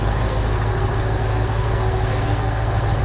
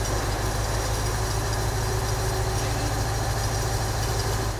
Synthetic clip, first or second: first